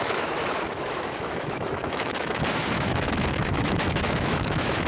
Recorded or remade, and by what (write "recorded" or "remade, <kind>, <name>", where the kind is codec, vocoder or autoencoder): remade, autoencoder, DAC-VAE